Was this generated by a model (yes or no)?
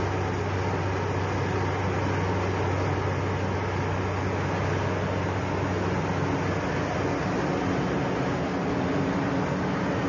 no